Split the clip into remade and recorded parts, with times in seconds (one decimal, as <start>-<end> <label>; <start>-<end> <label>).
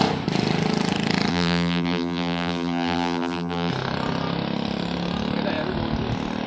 0.0-1.3 recorded; 1.3-3.7 remade; 3.7-6.5 recorded